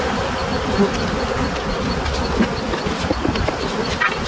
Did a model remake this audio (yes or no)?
no